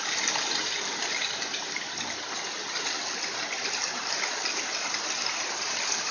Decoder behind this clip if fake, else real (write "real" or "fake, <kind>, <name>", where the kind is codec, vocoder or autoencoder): real